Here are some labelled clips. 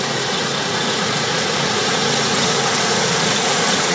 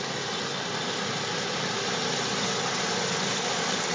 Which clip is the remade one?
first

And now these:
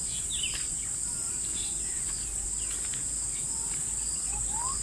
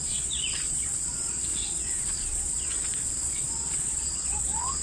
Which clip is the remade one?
second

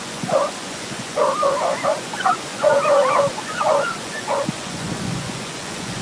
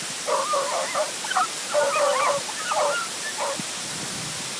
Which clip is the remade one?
first